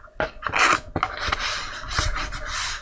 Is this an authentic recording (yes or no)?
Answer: yes